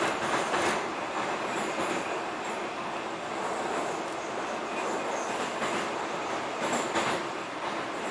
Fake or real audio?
real